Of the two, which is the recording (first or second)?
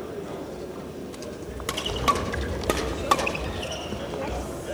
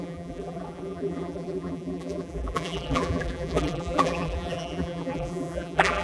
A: first